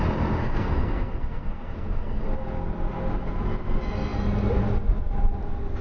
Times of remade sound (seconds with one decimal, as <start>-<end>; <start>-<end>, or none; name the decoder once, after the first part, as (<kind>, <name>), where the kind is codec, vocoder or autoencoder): 0.4-2.2 (codec, SNAC)